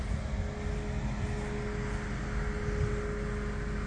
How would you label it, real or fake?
real